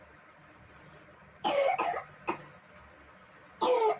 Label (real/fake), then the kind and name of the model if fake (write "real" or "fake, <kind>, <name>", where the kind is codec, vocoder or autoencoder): real